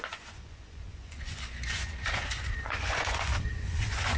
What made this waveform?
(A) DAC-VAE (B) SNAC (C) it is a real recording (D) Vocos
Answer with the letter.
D